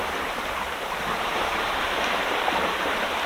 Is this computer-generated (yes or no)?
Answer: yes